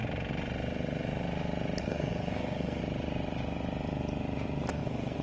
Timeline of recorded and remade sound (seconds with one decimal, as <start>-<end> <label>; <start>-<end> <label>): 0.0-1.8 recorded; 1.8-2.8 remade; 2.8-4.7 recorded; 4.7-5.2 remade